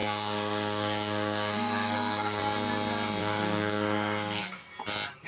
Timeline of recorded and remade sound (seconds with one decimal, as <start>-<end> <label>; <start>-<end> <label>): 0.0-2.4 remade; 2.4-3.2 recorded; 3.2-4.4 remade; 4.4-5.3 recorded